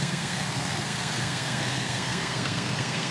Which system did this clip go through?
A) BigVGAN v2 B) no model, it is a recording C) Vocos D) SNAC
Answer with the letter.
D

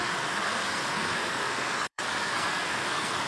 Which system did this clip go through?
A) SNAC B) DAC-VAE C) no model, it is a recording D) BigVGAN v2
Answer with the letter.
A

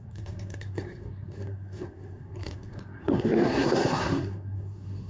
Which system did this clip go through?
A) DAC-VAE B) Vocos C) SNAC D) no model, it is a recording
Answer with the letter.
C